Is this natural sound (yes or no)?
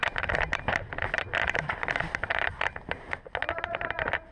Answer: yes